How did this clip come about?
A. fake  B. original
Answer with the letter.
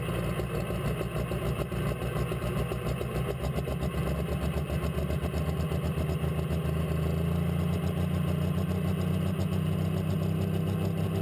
B